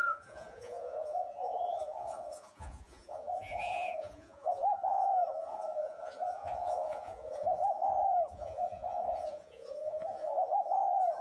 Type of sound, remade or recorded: remade